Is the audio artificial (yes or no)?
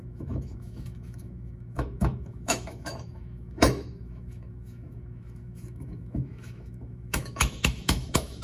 yes